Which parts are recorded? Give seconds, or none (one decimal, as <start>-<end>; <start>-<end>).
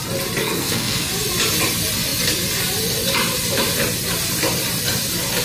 0.0-0.4; 1.1-5.4